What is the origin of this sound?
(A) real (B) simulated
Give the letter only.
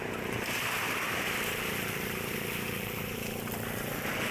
B